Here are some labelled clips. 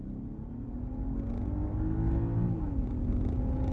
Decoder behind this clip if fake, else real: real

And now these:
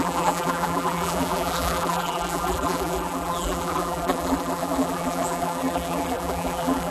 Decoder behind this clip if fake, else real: fake, vocoder, BigVGAN v2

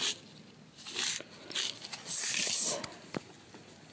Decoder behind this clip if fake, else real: real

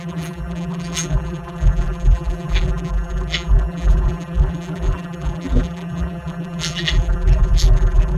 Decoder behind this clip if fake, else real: fake, vocoder, BigVGAN v2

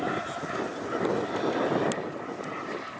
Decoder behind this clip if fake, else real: real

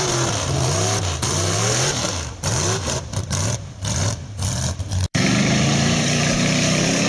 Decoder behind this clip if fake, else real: fake, vocoder, BigVGAN v2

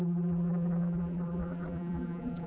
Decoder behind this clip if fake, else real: fake, vocoder, BigVGAN v2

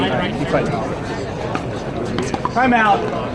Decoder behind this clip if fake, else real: real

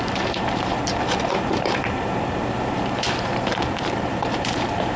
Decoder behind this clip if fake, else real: fake, vocoder, BigVGAN v2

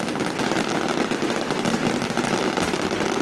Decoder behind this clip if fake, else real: real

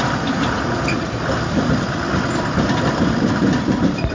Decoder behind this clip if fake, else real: fake, vocoder, BigVGAN v2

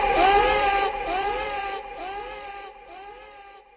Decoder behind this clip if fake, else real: fake, vocoder, BigVGAN v2